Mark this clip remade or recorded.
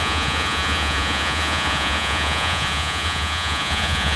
remade